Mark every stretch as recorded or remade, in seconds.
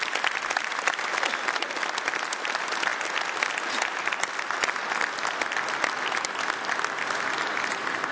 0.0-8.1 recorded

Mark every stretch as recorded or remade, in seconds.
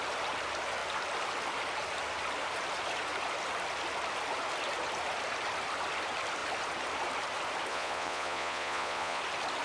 0.0-7.7 recorded; 7.7-9.2 remade; 9.2-9.6 recorded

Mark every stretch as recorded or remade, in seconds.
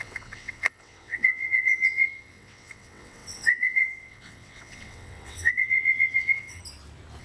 0.0-6.6 remade; 6.6-7.2 recorded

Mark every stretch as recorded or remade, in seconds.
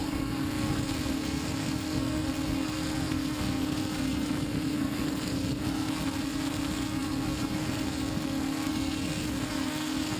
0.0-10.2 remade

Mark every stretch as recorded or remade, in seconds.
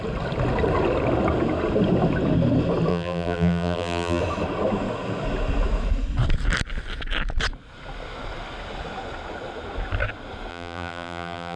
0.0-2.9 recorded; 2.9-4.2 remade; 4.2-10.5 recorded; 10.5-11.6 remade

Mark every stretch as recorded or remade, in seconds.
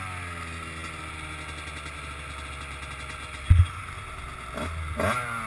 0.0-5.5 recorded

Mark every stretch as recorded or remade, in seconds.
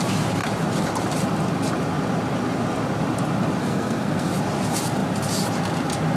0.0-3.6 recorded; 3.6-4.3 remade; 4.3-6.2 recorded